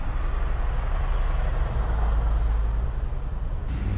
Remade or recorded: recorded